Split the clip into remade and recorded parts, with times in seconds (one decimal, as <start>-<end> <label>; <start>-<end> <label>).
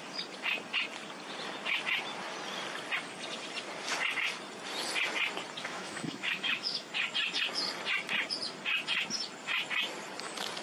0.0-5.6 recorded; 5.6-6.9 remade; 6.9-10.6 recorded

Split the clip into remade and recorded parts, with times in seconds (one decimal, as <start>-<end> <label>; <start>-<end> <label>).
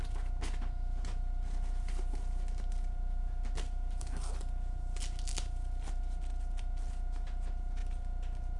0.0-8.6 recorded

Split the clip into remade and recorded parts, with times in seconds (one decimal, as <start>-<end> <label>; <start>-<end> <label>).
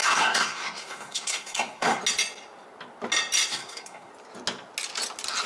0.0-2.0 remade; 2.0-3.5 recorded; 3.5-4.1 remade; 4.1-5.5 recorded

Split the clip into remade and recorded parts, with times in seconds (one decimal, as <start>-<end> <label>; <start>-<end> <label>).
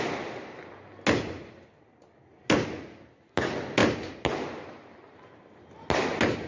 0.0-6.5 recorded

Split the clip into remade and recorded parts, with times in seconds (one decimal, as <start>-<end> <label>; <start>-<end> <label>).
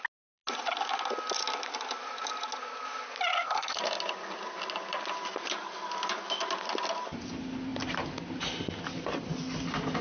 0.0-3.3 recorded; 3.3-3.8 remade; 3.8-10.0 recorded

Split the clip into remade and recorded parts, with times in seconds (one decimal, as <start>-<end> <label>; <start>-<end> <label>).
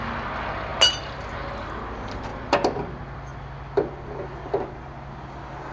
0.0-2.3 recorded; 2.3-2.9 remade; 2.9-5.7 recorded